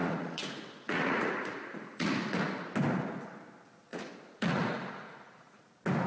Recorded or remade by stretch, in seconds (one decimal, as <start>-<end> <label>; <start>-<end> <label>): 0.0-2.1 remade; 2.1-3.9 recorded; 3.9-5.6 remade; 5.6-6.1 recorded

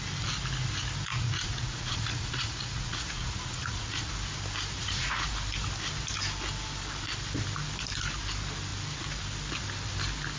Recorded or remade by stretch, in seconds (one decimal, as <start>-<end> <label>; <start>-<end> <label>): 0.0-1.1 recorded; 1.1-4.1 remade; 4.1-4.8 recorded; 4.8-5.3 remade; 5.3-10.4 recorded

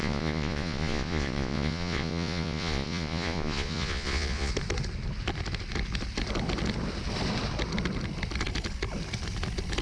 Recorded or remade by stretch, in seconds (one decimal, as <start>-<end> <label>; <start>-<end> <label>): 0.0-4.5 remade; 4.5-9.8 recorded